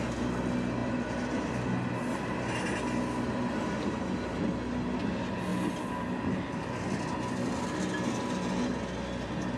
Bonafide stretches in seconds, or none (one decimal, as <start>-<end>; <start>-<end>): 0.0-9.6